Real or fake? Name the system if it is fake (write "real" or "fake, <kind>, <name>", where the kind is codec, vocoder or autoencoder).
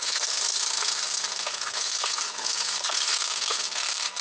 fake, codec, SNAC